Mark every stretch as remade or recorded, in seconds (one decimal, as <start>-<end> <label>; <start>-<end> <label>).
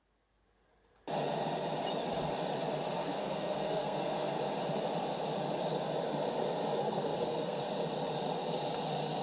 0.0-3.1 recorded; 3.1-4.4 remade; 4.4-6.8 recorded; 6.8-7.6 remade; 7.6-9.2 recorded